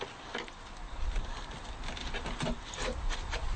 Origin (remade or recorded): recorded